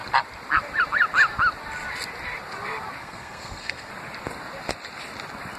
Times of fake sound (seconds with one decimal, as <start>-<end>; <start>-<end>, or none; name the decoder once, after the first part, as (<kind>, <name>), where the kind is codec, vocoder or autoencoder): 3.0-3.9 (codec, SNAC)